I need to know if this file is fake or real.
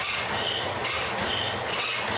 real